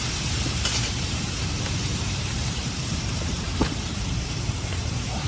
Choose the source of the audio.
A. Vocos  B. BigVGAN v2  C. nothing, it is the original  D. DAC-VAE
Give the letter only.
B